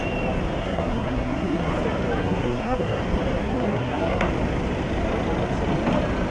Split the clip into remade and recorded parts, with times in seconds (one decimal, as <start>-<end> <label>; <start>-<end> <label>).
0.0-0.6 recorded; 0.6-1.7 remade; 1.7-2.2 recorded; 2.2-3.0 remade; 3.0-3.4 recorded; 3.4-4.3 remade; 4.3-6.3 recorded